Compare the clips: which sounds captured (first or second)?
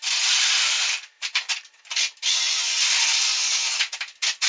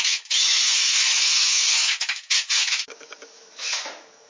first